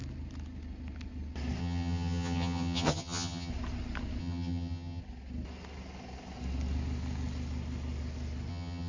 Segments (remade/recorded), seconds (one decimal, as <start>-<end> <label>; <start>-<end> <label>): 0.0-1.6 recorded; 1.6-3.5 remade; 3.5-4.2 recorded; 4.2-5.0 remade; 5.0-8.5 recorded; 8.5-8.9 remade